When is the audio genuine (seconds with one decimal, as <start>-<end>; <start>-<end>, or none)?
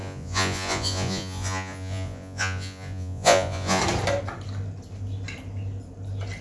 3.8-6.4